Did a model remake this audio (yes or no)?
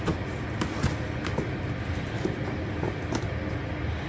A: no